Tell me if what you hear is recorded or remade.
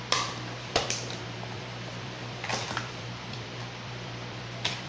remade